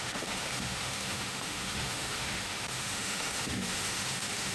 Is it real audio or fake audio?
fake